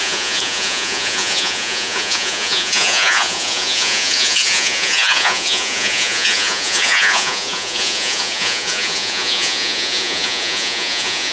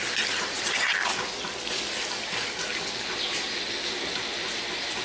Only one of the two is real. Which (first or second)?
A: second